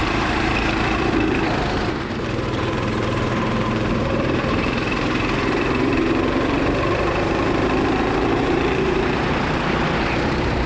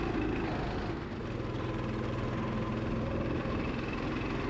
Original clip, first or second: second